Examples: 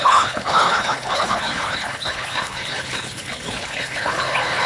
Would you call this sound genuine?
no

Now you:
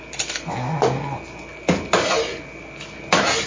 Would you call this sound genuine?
yes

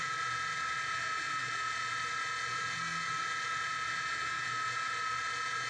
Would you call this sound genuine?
yes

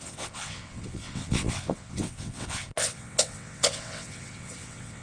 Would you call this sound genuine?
no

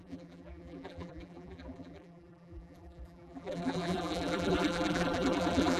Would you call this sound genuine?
no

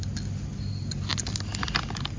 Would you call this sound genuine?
yes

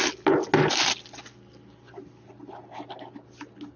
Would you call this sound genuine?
yes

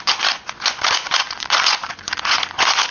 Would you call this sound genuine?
no